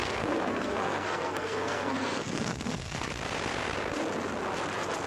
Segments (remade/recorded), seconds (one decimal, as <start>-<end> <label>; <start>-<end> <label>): 0.0-3.1 remade; 3.1-5.1 recorded